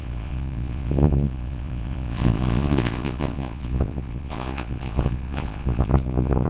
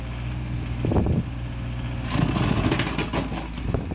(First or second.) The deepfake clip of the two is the first